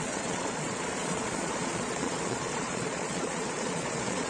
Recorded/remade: remade